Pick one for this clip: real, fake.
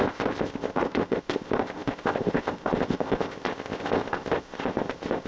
fake